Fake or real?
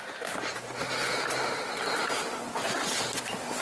real